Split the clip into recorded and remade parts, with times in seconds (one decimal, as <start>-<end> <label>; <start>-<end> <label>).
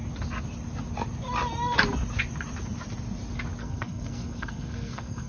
0.0-3.6 recorded; 3.6-5.3 remade